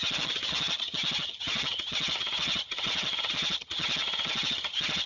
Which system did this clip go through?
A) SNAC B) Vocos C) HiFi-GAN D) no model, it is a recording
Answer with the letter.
C